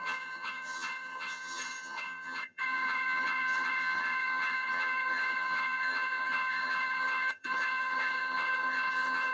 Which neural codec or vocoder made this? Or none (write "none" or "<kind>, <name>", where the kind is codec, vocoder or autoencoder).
vocoder, HiFi-GAN